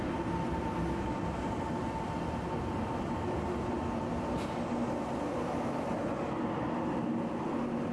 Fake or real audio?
real